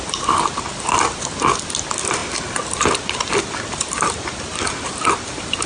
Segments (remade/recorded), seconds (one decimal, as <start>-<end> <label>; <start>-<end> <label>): 0.0-5.7 recorded